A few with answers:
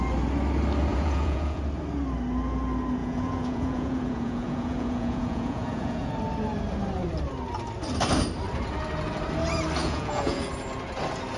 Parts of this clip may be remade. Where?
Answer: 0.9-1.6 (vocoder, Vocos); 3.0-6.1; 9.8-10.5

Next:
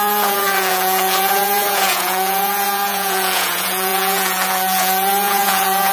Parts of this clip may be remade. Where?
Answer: 0.0-5.9 (vocoder, Vocos)

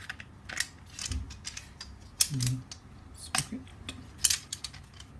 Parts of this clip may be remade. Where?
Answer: none